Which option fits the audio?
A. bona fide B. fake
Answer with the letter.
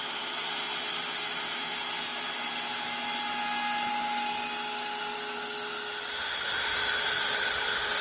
A